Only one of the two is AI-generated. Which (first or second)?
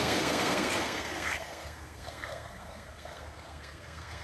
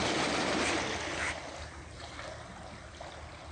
first